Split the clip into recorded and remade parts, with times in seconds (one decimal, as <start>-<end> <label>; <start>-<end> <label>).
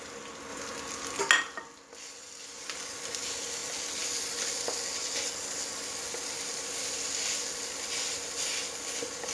0.0-9.3 recorded